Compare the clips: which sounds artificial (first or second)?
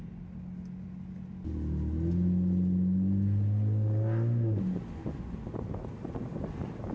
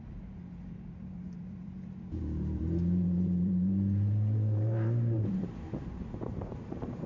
second